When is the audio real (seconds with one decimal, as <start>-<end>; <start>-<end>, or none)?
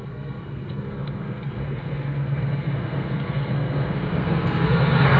none